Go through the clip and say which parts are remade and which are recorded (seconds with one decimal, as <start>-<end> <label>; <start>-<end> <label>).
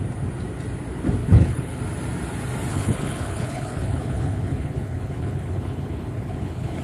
0.0-1.2 recorded; 1.2-1.8 remade; 1.8-2.7 recorded; 2.7-6.8 remade